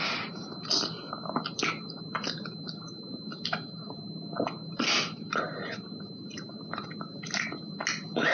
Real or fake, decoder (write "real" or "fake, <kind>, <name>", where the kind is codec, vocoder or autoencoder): real